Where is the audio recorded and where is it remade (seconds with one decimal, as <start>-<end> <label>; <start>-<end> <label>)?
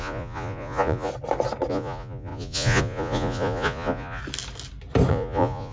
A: 0.0-1.1 remade; 1.1-1.7 recorded; 1.7-4.2 remade; 4.2-5.1 recorded; 5.1-5.7 remade